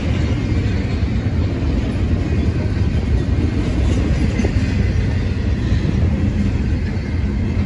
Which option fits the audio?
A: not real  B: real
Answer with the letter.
B